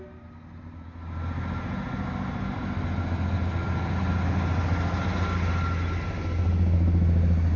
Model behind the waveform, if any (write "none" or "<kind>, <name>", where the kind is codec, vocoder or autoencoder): none